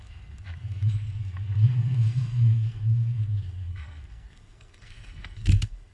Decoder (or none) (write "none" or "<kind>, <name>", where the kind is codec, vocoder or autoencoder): codec, SNAC